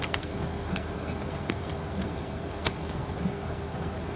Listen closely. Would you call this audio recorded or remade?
remade